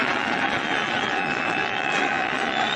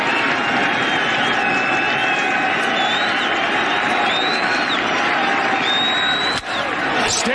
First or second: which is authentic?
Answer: second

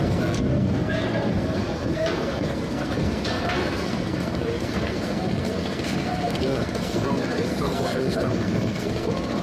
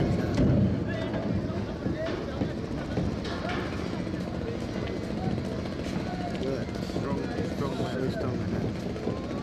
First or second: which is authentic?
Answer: second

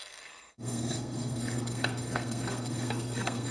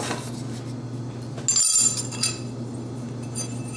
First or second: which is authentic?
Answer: second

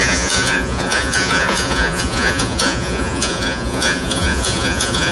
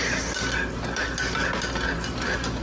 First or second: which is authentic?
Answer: second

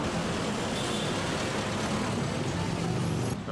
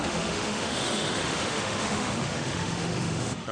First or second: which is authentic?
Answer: first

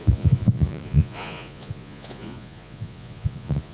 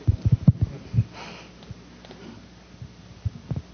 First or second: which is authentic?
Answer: second